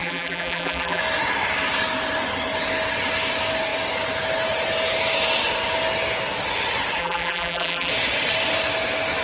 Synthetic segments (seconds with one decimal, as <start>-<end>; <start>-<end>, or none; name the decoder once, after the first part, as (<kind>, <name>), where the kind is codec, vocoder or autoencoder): 0.0-1.0 (vocoder, BigVGAN v2); 7.0-7.9